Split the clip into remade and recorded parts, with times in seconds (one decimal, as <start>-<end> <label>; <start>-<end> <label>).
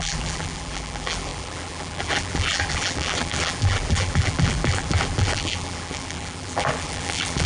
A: 0.0-7.5 remade